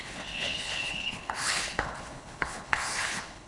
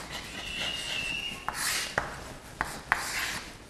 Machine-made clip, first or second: first